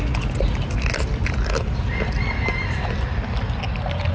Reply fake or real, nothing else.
real